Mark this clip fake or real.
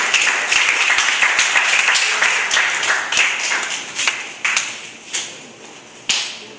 real